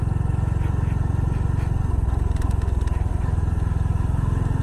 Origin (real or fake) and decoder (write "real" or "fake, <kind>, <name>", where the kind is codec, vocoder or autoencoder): real